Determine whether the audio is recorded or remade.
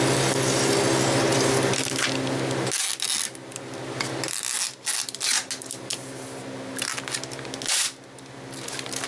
recorded